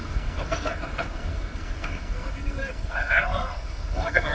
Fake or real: fake